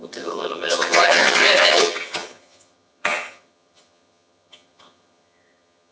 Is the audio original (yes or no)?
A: no